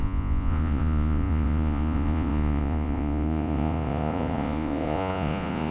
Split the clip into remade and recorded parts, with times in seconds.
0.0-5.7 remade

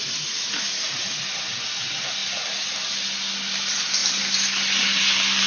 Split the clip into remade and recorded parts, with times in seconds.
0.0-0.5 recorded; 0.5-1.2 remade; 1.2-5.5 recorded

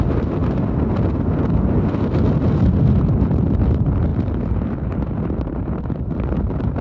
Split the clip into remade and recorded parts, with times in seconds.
0.0-6.8 recorded

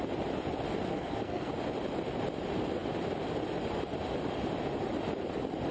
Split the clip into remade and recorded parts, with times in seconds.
0.0-0.9 recorded; 0.9-1.5 remade; 1.5-5.7 recorded